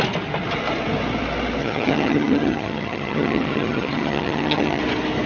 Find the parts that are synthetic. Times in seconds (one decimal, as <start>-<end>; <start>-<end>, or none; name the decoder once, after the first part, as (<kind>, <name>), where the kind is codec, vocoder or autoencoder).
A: 1.6-4.8 (vocoder, HiFi-GAN)